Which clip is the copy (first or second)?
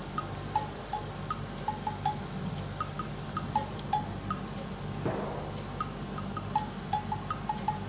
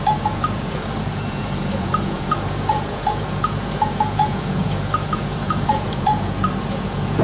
second